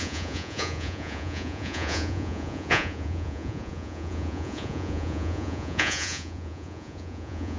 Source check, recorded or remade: remade